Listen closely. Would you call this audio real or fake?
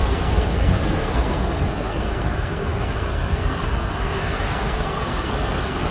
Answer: fake